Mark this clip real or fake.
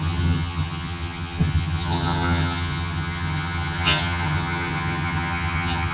fake